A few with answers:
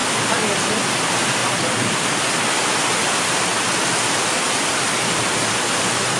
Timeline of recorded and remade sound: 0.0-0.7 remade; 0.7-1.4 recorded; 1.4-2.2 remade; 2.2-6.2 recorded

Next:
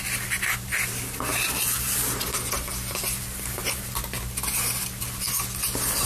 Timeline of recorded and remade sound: 0.0-1.3 recorded; 1.3-5.0 remade; 5.0-6.1 recorded